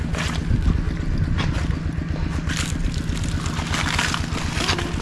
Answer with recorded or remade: recorded